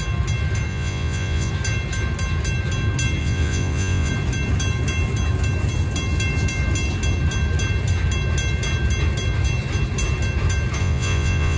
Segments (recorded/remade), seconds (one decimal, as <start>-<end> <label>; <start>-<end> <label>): 0.0-0.7 recorded; 0.7-1.5 remade; 1.5-3.2 recorded; 3.2-4.1 remade; 4.1-10.8 recorded; 10.8-11.6 remade